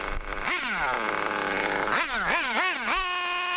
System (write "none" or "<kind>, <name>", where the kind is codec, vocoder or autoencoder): none